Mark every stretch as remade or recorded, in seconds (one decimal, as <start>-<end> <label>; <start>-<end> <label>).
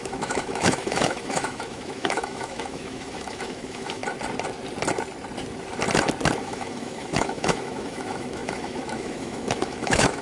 0.0-4.0 remade; 4.0-6.4 recorded; 6.4-10.2 remade